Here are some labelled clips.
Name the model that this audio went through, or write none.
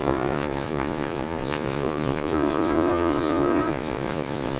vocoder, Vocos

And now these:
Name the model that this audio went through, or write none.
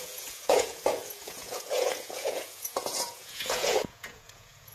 vocoder, Vocos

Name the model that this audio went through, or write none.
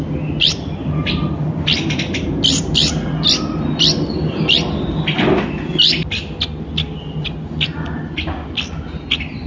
none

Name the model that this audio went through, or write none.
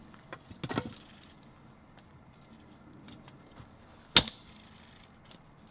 none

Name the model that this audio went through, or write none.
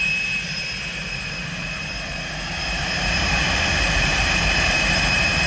vocoder, BigVGAN v2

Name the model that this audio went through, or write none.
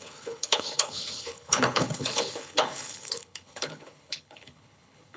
codec, HILCodec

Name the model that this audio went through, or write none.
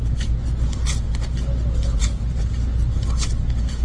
none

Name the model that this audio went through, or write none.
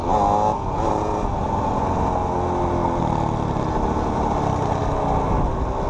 none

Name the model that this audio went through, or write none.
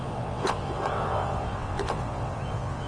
vocoder, WaveNeXt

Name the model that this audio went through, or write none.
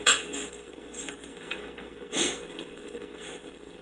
codec, SNAC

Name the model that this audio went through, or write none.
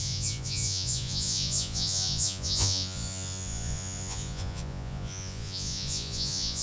vocoder, Vocos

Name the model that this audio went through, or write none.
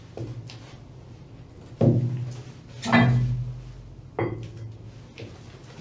none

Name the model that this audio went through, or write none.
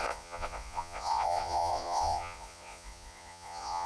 vocoder, Vocos